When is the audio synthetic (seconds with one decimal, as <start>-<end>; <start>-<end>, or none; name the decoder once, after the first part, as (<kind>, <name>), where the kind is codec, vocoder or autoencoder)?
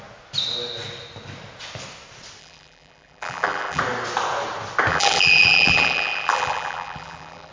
2.4-3.8 (vocoder, BigVGAN v2); 4.9-7.5